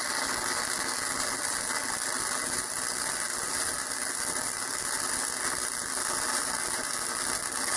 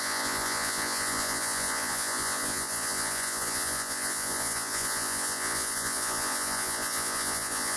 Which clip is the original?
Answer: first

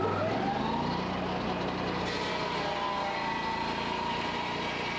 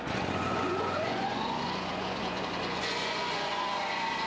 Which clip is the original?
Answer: first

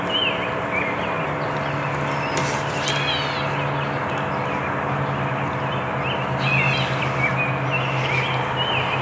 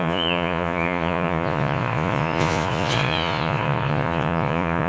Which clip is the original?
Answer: first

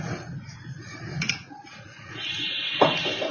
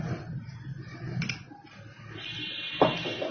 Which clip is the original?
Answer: second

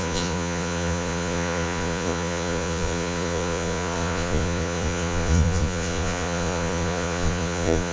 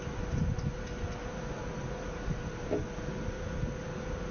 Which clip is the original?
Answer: second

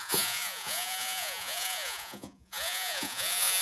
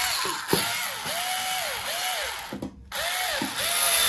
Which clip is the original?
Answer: second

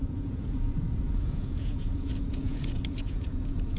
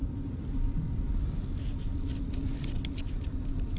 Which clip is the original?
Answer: second